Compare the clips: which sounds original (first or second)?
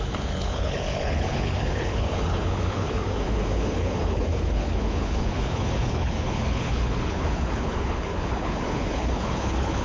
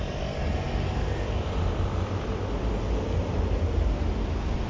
second